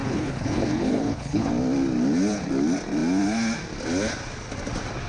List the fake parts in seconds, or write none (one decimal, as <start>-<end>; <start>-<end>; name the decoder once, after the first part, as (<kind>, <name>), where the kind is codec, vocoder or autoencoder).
0.0-1.5 (codec, HILCodec)